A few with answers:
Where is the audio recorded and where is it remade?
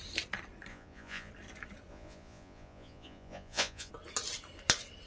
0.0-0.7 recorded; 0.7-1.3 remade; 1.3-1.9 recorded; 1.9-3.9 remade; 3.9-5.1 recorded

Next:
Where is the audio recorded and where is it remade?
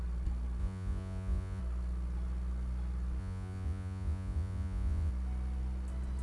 0.0-0.6 recorded; 0.6-1.6 remade; 1.6-3.2 recorded; 3.2-5.1 remade; 5.1-6.2 recorded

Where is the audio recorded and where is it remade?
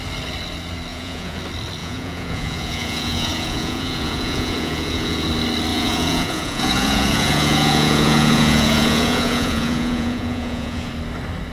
0.0-0.9 recorded; 0.9-1.4 remade; 1.4-1.8 recorded; 1.8-5.3 remade; 5.3-5.7 recorded; 5.7-10.9 remade; 10.9-11.5 recorded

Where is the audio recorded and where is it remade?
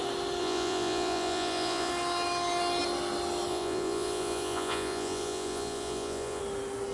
0.0-0.4 recorded; 0.4-1.9 remade; 1.9-3.5 recorded; 3.5-6.4 remade; 6.4-6.9 recorded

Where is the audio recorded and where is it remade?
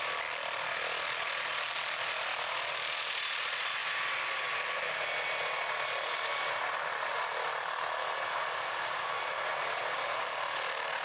0.0-11.0 recorded